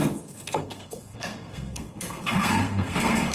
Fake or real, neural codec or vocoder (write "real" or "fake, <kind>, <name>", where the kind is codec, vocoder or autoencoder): fake, codec, SNAC